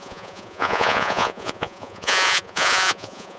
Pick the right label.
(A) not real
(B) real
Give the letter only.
A